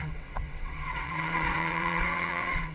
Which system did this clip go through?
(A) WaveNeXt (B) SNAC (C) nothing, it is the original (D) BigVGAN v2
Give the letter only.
A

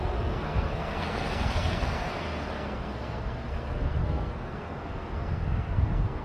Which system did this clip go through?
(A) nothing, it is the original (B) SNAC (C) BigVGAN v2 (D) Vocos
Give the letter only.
B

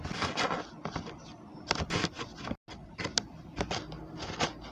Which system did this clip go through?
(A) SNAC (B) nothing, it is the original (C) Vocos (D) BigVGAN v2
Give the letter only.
B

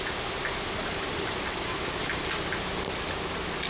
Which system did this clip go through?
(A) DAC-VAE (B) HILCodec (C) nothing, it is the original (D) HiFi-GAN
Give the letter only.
C